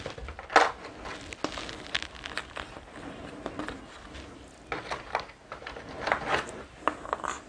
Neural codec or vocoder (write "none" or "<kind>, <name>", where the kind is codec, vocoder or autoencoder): none